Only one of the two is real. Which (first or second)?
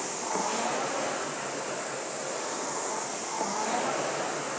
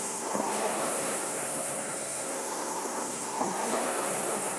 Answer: first